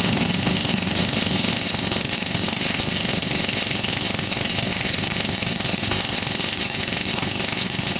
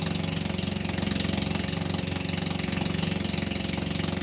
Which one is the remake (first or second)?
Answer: first